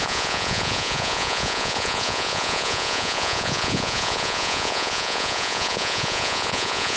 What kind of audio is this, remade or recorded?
remade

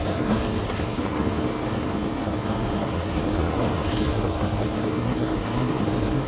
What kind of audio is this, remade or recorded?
remade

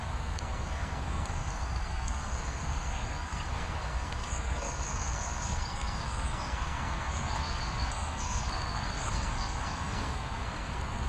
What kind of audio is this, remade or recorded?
remade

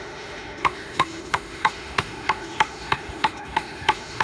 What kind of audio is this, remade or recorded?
remade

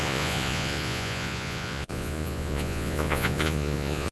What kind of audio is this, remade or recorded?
remade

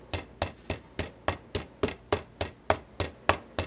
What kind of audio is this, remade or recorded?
recorded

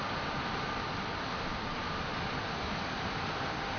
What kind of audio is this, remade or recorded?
recorded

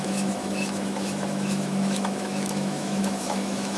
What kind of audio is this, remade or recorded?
remade